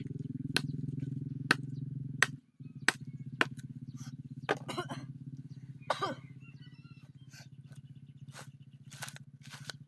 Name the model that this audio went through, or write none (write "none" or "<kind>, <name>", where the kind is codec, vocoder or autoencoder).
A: none